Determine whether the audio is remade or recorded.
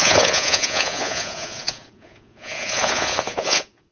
remade